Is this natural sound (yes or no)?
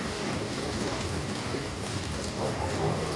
no